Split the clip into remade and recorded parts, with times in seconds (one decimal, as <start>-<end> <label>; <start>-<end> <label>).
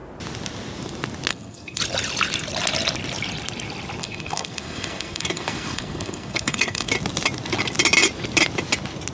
0.0-1.3 recorded; 1.3-1.8 remade; 1.8-4.0 recorded; 4.0-6.9 remade; 6.9-9.1 recorded